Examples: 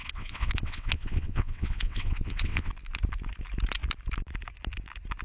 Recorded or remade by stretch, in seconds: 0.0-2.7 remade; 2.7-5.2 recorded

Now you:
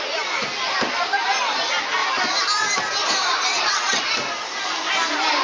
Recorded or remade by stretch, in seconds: 0.0-3.5 recorded; 3.5-4.0 remade; 4.0-5.4 recorded